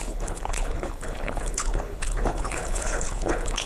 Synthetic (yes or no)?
yes